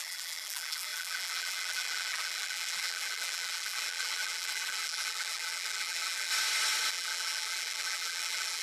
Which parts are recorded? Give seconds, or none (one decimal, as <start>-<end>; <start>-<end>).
6.3-6.9